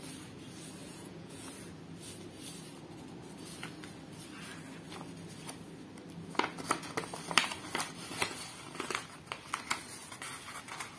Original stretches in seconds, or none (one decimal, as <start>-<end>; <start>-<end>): 0.0-0.8; 1.5-11.0